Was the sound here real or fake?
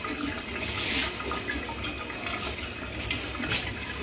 real